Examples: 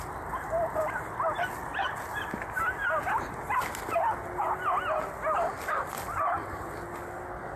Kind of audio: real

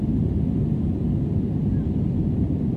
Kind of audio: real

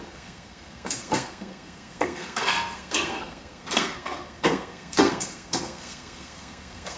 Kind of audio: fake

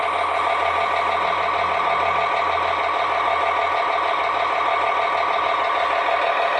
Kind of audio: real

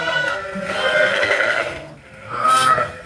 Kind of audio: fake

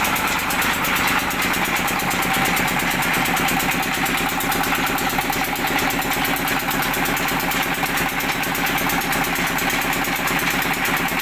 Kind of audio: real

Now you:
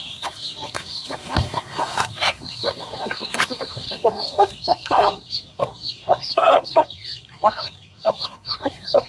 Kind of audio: fake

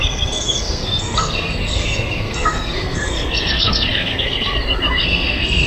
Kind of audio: fake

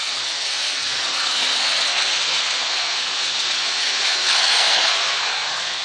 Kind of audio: fake